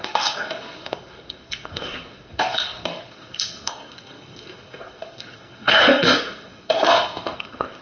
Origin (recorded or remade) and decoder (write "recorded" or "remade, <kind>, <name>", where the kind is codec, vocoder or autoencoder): remade, codec, SNAC